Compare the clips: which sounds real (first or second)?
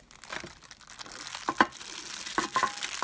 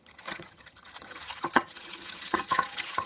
first